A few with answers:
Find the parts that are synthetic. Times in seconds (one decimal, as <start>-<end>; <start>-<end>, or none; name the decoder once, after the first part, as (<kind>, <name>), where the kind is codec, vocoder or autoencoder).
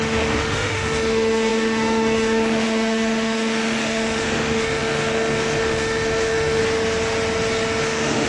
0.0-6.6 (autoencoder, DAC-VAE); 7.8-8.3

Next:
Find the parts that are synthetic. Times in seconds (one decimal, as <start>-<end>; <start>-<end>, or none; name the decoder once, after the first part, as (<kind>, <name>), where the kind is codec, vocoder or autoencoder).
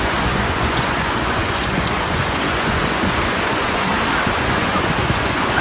0.0-3.9 (vocoder, Vocos); 4.4-5.6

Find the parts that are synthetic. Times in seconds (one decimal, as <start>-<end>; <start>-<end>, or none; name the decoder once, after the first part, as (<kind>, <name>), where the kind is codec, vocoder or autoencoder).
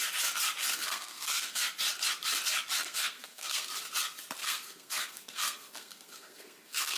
0.6-1.6 (codec, SNAC); 2.8-3.7; 4.4-7.0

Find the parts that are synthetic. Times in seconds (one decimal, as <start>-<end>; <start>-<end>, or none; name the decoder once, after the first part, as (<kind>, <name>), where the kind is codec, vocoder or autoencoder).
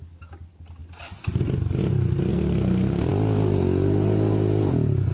2.3-3.1 (codec, SNAC)